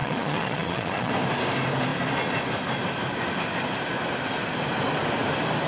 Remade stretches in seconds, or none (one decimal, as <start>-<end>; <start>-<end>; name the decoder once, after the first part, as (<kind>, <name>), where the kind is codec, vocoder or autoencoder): 0.0-1.1 (vocoder, Vocos)